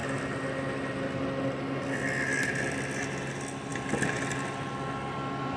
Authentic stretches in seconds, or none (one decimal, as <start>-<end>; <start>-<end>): 0.0-5.6